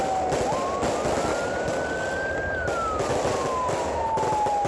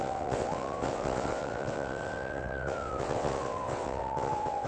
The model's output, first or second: second